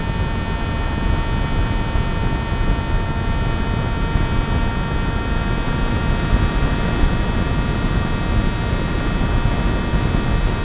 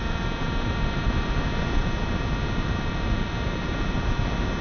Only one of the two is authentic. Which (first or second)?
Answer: first